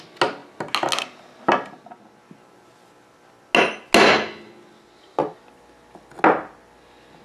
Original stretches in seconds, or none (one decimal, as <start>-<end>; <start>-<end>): 0.0-7.2